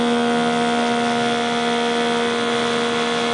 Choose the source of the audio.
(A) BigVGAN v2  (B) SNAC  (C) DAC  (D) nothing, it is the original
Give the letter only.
D